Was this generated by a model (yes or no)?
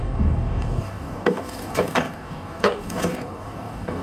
yes